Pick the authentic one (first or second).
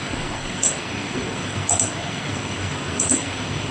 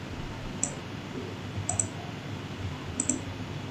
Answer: second